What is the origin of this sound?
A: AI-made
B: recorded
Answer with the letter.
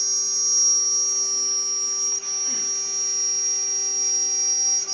B